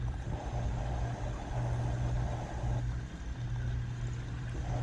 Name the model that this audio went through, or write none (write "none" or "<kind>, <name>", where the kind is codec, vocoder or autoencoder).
none